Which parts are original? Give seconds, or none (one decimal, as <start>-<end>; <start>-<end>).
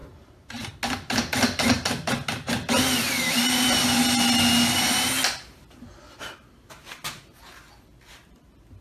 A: 0.7-8.8